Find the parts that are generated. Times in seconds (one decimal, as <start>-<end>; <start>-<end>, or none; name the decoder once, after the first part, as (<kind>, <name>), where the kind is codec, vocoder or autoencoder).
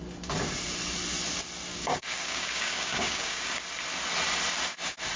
1.7-3.6 (codec, DAC)